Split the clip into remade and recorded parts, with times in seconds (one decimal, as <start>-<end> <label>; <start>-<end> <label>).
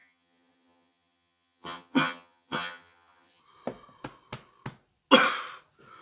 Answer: 0.0-3.4 remade; 3.4-6.0 recorded